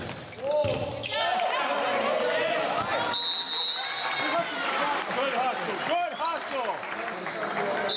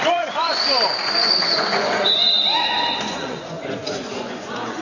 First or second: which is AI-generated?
second